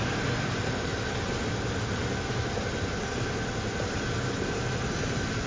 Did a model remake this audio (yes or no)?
no